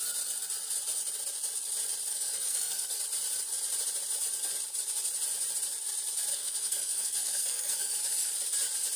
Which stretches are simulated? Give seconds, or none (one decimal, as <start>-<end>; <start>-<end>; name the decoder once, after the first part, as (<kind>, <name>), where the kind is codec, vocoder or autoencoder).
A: 2.1-3.0 (codec, SNAC); 6.3-8.3

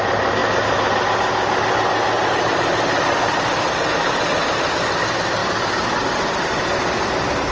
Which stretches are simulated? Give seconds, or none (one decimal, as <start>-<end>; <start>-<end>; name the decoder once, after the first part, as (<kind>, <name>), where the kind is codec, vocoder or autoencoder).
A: none

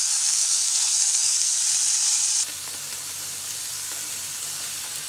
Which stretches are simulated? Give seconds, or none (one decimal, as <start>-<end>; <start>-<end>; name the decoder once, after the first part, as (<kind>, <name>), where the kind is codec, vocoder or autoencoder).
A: 0.0-1.6 (codec, SNAC)

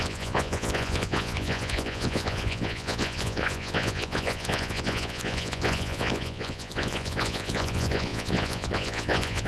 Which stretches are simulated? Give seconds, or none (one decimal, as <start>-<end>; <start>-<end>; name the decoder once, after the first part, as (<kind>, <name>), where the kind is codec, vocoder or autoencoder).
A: 0.0-9.5 (vocoder, Vocos)